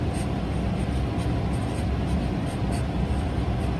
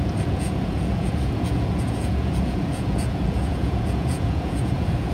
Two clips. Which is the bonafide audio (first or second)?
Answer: first